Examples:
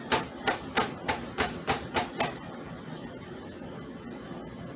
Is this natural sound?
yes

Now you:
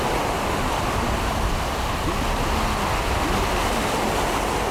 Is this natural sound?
yes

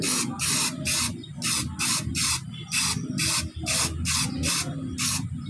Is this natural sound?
yes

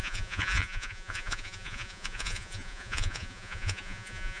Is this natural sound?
no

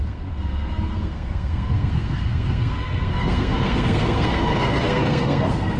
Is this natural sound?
no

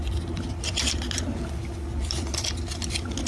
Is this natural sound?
yes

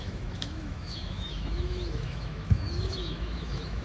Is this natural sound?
no